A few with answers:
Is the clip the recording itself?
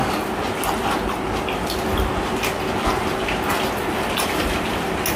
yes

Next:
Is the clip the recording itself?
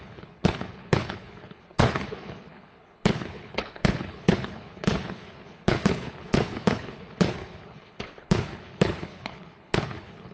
no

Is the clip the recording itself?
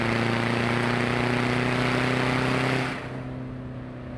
yes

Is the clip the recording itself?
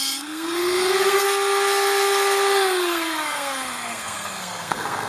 no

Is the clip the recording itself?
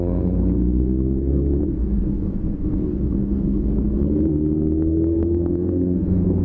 no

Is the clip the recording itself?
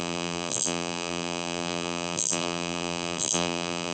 no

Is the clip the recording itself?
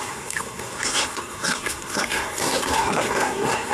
no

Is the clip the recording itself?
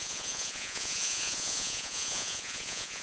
no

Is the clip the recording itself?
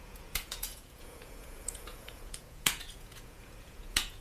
no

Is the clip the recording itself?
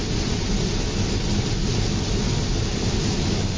yes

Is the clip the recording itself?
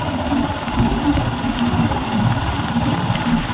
yes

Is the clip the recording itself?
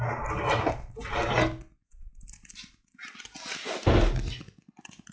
yes